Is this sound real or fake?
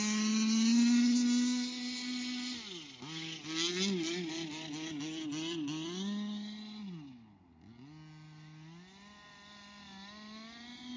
real